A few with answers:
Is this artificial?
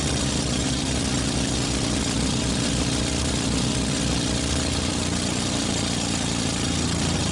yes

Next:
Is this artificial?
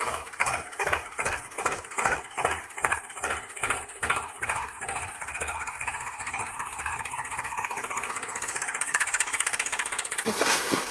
yes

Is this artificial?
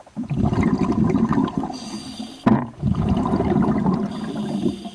no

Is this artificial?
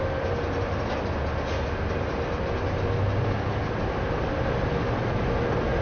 no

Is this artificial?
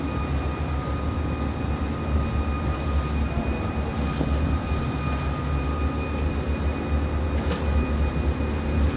no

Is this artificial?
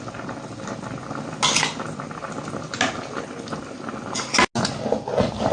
no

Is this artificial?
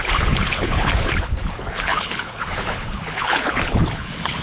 yes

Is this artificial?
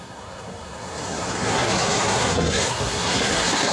yes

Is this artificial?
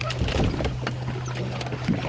no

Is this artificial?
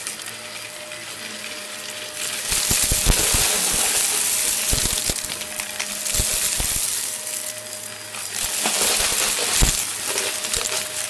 no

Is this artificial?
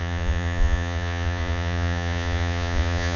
yes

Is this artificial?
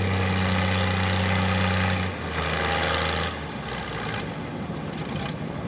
no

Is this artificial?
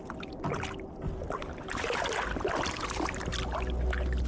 no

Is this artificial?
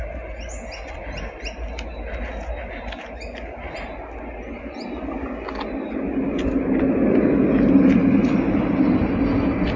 no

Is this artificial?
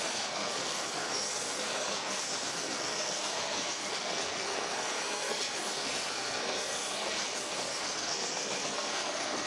yes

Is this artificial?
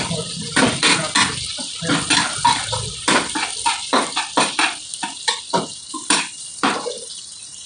yes